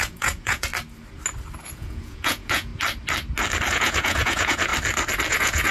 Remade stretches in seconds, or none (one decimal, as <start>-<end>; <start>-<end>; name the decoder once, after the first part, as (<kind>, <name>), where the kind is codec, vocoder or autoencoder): 0.0-0.7 (vocoder, Vocos); 1.7-2.7; 3.7-4.7; 5.3-5.7

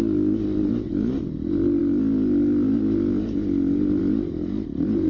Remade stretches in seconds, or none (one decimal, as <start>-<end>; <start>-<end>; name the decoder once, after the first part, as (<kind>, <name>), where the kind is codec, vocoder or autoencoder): none

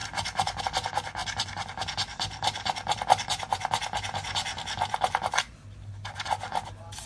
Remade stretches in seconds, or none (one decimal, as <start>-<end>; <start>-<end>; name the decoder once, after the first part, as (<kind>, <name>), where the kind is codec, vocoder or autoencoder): none

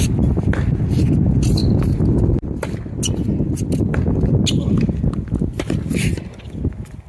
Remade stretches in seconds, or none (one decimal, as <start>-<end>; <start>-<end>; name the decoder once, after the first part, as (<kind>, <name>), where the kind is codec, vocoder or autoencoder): none

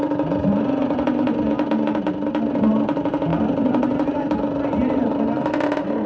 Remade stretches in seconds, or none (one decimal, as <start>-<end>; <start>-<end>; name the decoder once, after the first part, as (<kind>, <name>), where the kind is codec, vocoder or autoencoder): none